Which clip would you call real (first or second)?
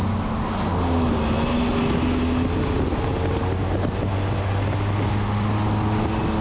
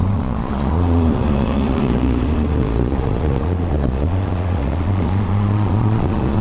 first